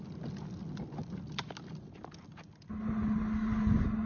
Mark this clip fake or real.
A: real